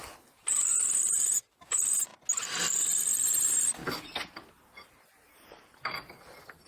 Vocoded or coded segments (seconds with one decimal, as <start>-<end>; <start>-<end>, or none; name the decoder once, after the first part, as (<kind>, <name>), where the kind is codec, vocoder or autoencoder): 0.0-2.1 (vocoder, BigVGAN v2); 3.0-3.8; 4.9-6.7